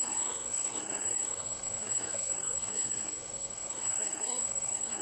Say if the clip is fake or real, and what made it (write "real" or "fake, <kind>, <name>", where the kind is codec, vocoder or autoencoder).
fake, codec, SNAC